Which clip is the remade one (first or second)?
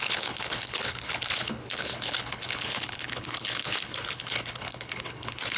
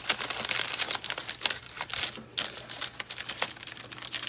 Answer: first